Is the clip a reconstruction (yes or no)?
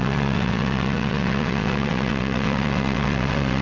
yes